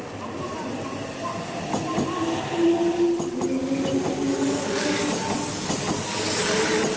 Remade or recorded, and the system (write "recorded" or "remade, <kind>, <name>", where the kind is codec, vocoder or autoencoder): recorded